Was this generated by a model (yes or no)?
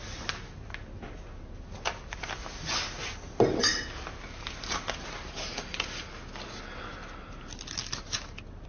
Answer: no